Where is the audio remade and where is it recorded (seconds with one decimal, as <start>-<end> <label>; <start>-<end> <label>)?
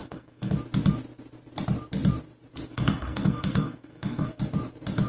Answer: 0.0-0.5 remade; 0.5-2.7 recorded; 2.7-4.4 remade; 4.4-5.1 recorded